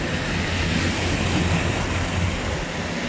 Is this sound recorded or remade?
recorded